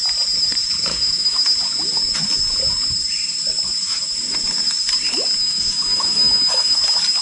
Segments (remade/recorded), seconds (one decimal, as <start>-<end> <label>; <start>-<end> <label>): 0.0-0.9 recorded; 0.9-1.5 remade; 1.5-5.4 recorded; 5.4-6.8 remade; 6.8-7.2 recorded

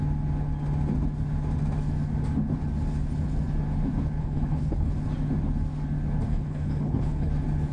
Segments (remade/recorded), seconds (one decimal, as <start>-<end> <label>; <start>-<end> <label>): 0.0-4.2 recorded; 4.2-4.9 remade; 4.9-6.3 recorded; 6.3-7.3 remade; 7.3-7.7 recorded

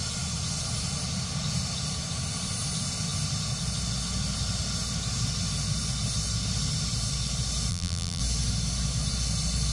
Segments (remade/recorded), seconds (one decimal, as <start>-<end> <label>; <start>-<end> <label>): 0.0-7.7 recorded; 7.7-8.2 remade; 8.2-9.7 recorded

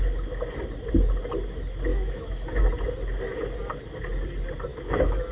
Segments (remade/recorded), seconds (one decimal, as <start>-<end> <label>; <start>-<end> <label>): 0.0-1.9 recorded; 1.9-2.6 remade; 2.6-4.7 recorded; 4.7-5.3 remade